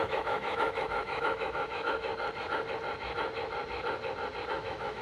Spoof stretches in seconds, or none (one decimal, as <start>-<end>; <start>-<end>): 0.0-2.1; 4.5-5.0